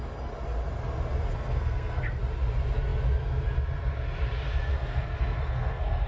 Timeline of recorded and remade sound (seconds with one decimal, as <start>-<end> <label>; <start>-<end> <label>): 0.0-1.3 recorded; 1.3-2.2 remade; 2.2-4.7 recorded; 4.7-6.1 remade